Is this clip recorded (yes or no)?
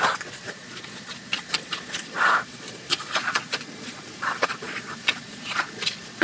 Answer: no